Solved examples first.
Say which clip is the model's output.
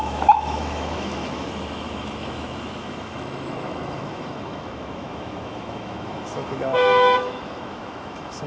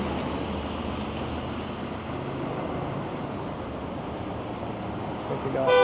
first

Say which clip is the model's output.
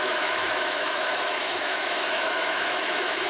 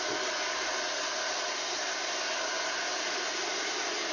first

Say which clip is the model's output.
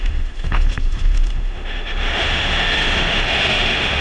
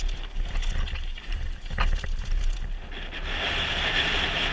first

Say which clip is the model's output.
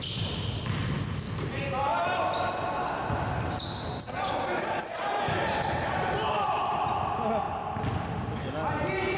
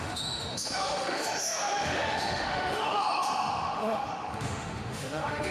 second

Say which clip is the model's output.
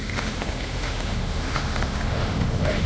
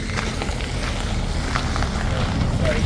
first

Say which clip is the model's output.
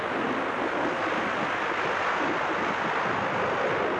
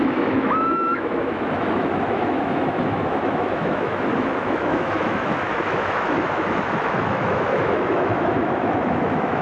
second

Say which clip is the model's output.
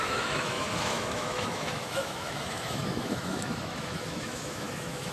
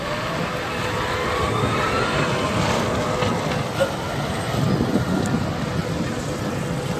first